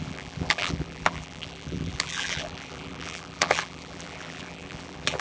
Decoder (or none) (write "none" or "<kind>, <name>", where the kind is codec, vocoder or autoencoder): vocoder, BigVGAN v2